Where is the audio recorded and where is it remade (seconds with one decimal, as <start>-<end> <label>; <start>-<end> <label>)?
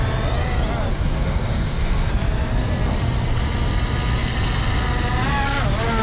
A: 0.0-0.9 recorded; 0.9-2.1 remade; 2.1-6.0 recorded